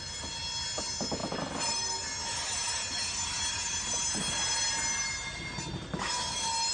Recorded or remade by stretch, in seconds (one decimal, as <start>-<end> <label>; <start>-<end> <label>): 0.0-6.7 recorded